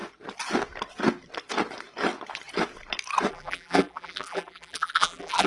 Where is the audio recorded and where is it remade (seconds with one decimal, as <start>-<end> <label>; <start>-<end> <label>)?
0.0-3.3 recorded; 3.3-5.5 remade